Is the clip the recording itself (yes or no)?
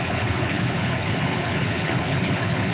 no